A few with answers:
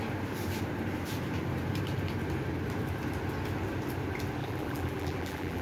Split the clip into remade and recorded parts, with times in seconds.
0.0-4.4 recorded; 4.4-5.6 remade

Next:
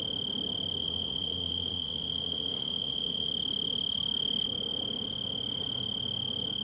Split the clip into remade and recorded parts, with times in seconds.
0.0-0.8 recorded; 0.8-3.3 remade; 3.3-6.6 recorded

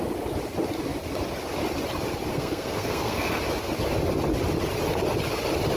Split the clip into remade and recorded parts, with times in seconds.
0.0-2.3 recorded; 2.3-3.4 remade; 3.4-5.8 recorded